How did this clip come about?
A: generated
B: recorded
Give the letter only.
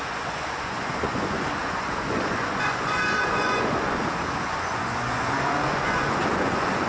A